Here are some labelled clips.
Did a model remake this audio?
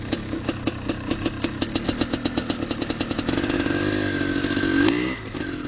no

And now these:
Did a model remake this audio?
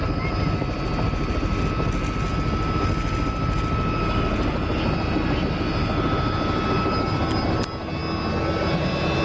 no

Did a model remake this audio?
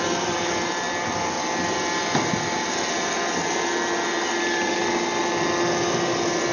no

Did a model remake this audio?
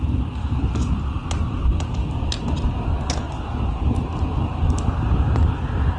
no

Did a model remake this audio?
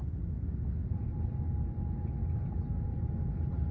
no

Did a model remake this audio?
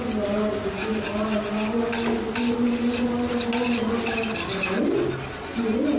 no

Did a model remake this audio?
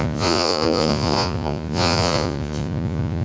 yes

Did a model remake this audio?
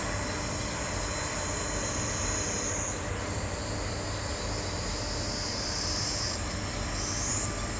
no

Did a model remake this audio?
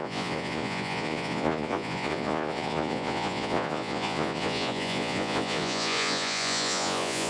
yes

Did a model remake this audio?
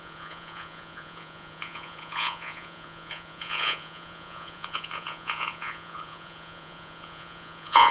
yes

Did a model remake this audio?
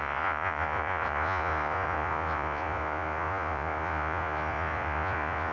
yes